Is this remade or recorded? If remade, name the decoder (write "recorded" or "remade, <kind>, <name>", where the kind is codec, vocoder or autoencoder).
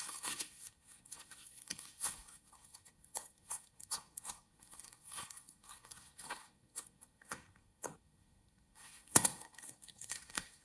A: remade, codec, SNAC